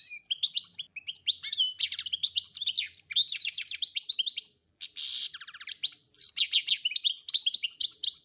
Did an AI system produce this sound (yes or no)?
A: no